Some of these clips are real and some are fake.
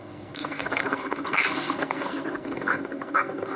fake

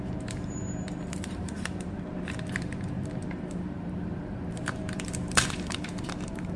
fake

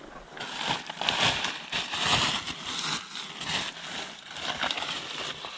real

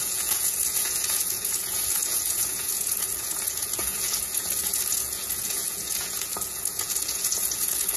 fake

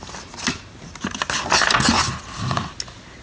real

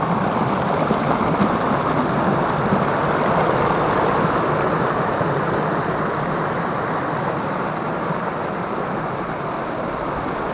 real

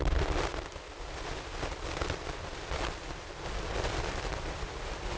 fake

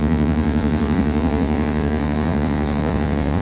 fake